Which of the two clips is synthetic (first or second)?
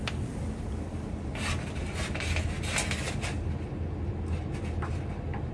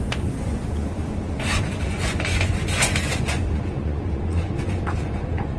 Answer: second